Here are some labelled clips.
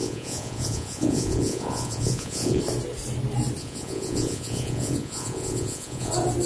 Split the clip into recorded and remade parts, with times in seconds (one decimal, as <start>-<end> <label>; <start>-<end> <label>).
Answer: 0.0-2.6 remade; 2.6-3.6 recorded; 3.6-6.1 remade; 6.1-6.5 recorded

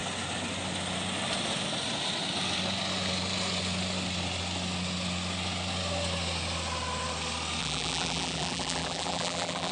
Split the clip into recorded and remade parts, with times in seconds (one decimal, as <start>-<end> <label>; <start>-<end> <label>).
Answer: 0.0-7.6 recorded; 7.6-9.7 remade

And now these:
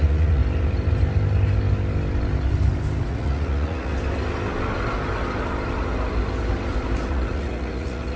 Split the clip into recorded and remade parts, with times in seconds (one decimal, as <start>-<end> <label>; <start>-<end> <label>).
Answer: 0.0-0.4 remade; 0.4-3.1 recorded; 3.1-3.9 remade; 3.9-7.1 recorded; 7.1-8.2 remade

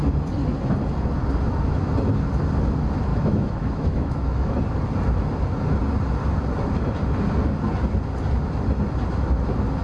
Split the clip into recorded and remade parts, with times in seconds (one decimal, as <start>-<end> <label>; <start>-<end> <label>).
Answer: 0.0-3.1 recorded; 3.1-4.5 remade; 4.5-9.8 recorded

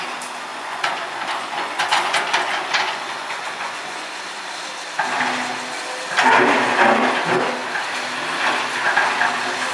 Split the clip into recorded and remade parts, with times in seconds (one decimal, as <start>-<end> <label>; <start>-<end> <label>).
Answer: 0.0-0.5 recorded; 0.5-4.2 remade; 4.2-9.7 recorded